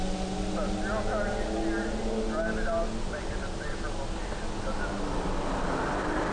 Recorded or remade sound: recorded